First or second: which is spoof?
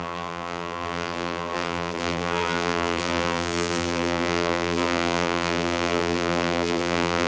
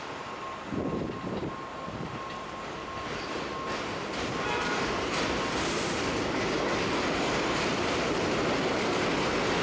first